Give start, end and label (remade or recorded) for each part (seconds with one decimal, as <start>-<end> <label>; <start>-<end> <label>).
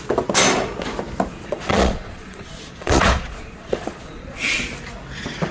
0.0-1.3 recorded; 1.3-4.6 remade; 4.6-5.5 recorded